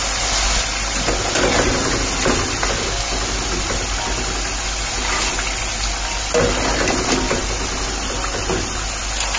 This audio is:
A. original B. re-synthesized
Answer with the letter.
A